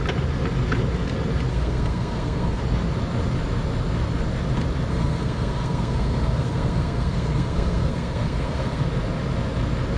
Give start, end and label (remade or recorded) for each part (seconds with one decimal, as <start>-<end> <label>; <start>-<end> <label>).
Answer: 0.0-1.5 recorded; 1.5-2.6 remade; 2.6-4.9 recorded; 4.9-8.8 remade; 8.8-10.0 recorded